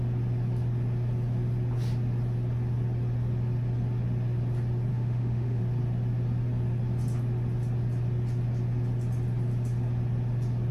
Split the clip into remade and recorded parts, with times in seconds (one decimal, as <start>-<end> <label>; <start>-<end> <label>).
0.0-4.9 recorded; 4.9-5.6 remade; 5.6-10.7 recorded